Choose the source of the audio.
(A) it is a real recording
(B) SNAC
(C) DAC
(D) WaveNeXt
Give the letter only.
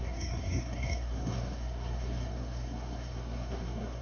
B